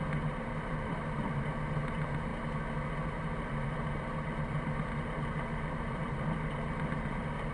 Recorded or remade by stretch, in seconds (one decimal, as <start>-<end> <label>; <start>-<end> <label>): 0.0-2.3 remade; 2.3-3.1 recorded; 3.1-7.5 remade